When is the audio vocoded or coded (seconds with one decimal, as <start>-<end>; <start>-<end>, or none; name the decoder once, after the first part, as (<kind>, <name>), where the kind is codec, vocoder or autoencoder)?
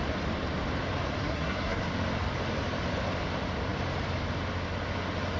1.2-1.8 (codec, SNAC)